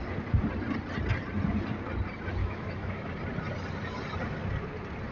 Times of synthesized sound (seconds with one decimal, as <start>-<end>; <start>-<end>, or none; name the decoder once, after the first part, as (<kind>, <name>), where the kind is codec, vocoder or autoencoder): 2.4-3.1 (autoencoder, DAC-VAE)